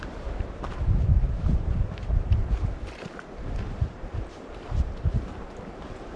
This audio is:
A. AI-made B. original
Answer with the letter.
A